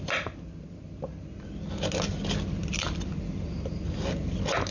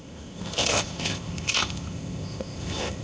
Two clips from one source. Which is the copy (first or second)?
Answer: second